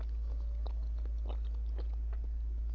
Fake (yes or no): no